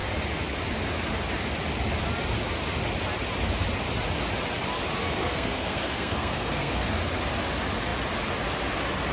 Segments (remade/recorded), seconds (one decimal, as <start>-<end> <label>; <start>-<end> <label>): 0.0-5.2 recorded; 5.2-6.9 remade; 6.9-9.1 recorded